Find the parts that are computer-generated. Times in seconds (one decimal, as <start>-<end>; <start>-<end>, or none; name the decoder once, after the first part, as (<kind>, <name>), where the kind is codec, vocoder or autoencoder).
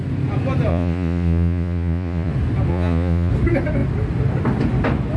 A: 0.7-2.3 (vocoder, Vocos); 2.7-3.3